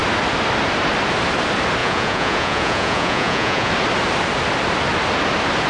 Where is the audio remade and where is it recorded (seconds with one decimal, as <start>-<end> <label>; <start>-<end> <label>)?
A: 0.0-1.8 recorded; 1.8-3.7 remade; 3.7-5.7 recorded